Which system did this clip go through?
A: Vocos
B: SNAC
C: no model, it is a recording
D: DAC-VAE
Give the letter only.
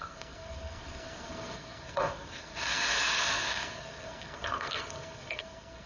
B